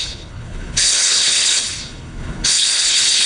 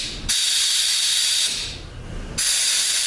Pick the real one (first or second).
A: second